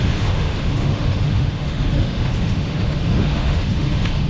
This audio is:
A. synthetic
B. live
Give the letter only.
A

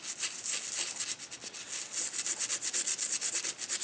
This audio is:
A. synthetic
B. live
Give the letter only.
B